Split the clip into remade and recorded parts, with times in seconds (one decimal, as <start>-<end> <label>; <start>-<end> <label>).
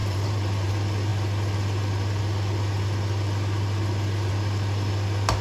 0.0-0.7 remade; 0.7-5.4 recorded